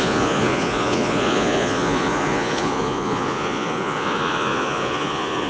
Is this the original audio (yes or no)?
no